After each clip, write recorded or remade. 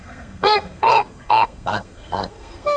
remade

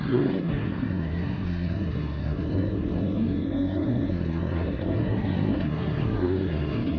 remade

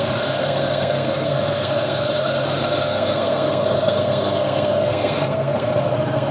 remade